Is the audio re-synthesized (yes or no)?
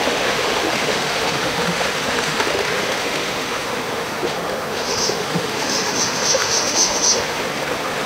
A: yes